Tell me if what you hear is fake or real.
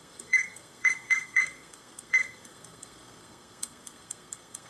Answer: fake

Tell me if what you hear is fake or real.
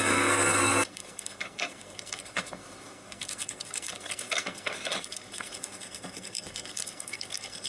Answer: fake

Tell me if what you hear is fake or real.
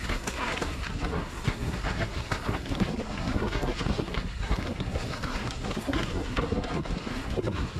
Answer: fake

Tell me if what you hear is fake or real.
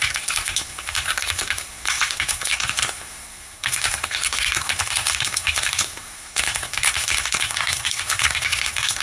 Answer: fake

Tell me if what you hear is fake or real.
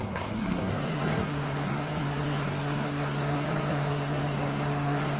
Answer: fake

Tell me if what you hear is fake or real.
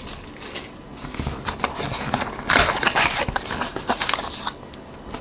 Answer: real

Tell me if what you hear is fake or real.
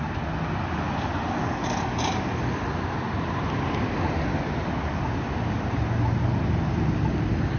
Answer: real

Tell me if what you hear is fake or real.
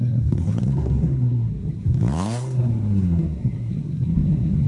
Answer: fake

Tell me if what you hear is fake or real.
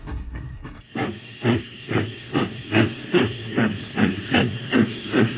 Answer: fake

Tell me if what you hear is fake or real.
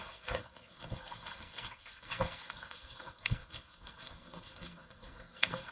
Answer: fake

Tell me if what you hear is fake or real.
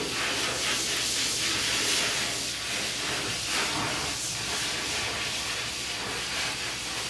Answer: real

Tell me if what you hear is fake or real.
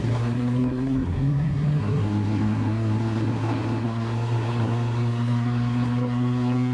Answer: fake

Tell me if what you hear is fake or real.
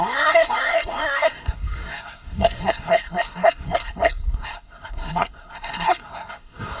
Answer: fake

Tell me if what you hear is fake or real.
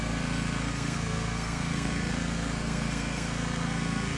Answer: fake